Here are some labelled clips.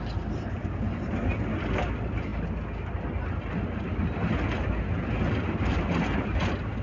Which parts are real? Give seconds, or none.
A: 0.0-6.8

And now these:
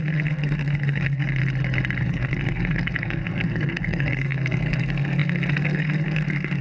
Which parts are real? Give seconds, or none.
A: 1.4-2.0